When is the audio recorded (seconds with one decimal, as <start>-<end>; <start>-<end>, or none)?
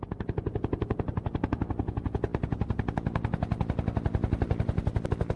0.0-5.4